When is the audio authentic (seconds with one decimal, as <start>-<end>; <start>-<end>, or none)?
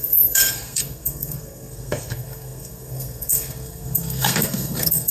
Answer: none